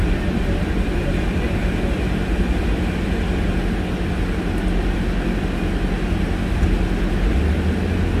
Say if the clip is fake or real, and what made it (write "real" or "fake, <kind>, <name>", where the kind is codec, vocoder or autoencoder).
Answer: real